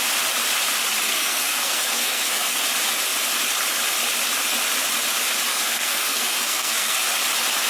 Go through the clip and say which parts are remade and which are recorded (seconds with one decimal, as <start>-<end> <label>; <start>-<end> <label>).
0.0-1.1 recorded; 1.1-2.6 remade; 2.6-5.5 recorded; 5.5-7.0 remade; 7.0-7.7 recorded